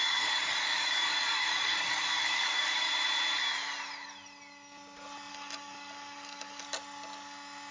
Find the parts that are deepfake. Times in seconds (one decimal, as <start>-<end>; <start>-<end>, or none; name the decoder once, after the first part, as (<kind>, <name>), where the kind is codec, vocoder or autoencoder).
0.0-2.9 (codec, DAC); 5.3-6.6